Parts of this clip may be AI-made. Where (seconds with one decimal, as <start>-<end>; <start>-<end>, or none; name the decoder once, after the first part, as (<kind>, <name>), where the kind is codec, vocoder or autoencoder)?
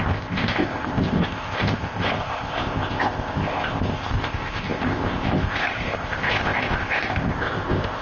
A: 0.0-8.0 (codec, ZipCodec)